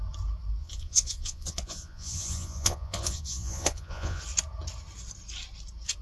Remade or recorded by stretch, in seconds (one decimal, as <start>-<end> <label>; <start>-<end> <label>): 0.0-0.6 recorded; 0.6-4.2 remade; 4.2-6.0 recorded